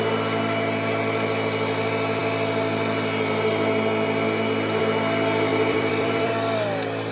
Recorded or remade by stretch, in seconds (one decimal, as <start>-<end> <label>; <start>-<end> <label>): 0.0-5.5 recorded; 5.5-6.3 remade; 6.3-7.1 recorded